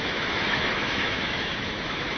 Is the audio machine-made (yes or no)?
yes